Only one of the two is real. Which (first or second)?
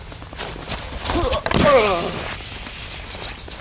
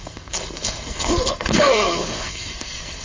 first